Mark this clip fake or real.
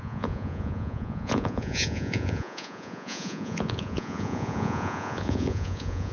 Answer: fake